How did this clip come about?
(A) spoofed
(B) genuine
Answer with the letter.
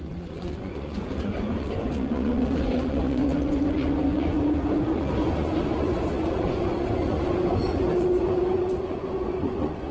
A